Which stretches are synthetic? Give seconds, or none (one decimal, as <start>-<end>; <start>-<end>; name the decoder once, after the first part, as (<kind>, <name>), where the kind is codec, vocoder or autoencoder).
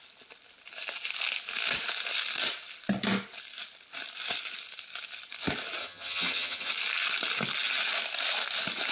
5.8-6.7 (vocoder, HiFi-GAN)